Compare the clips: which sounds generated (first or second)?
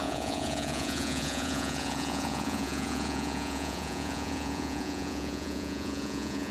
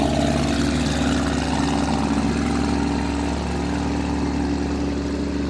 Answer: first